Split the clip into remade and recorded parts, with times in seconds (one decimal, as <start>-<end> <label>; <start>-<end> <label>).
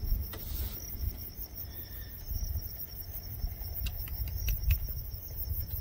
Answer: 0.0-1.6 recorded; 1.6-3.3 remade; 3.3-4.0 recorded; 4.0-5.8 remade